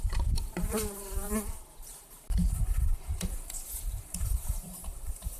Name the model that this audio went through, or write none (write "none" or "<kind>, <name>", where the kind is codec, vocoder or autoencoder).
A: vocoder, BigVGAN v2